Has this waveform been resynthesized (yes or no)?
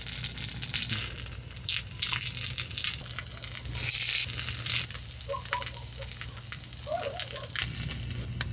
no